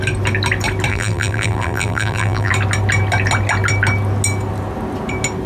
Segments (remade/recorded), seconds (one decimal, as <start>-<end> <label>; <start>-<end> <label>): 0.0-0.9 recorded; 0.9-2.5 remade; 2.5-5.5 recorded